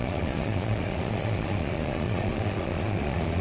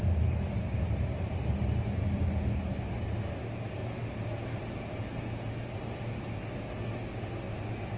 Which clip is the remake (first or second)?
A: first